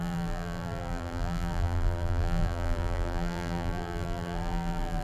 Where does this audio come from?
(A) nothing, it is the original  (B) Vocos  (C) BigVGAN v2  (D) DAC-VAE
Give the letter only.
C